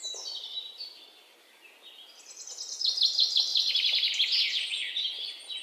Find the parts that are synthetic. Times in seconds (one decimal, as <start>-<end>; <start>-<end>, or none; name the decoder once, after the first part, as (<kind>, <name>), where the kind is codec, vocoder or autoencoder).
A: 3.5-4.7 (vocoder, BigVGAN v2)